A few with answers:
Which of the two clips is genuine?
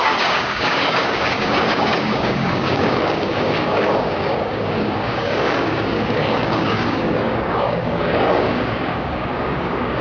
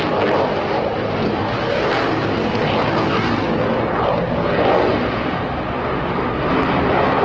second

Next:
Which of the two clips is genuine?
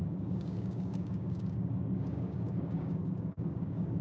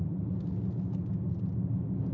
second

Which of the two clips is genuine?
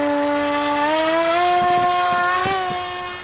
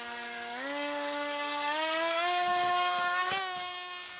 first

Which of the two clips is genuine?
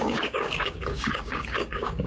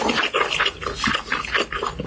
second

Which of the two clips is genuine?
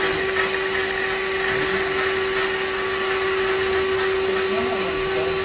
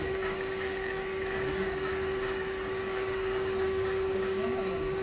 first